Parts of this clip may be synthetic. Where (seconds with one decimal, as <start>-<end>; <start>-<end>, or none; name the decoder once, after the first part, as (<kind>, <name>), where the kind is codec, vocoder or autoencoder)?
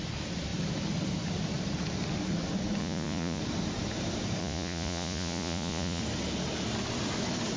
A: 2.8-3.4 (vocoder, Vocos); 4.4-6.0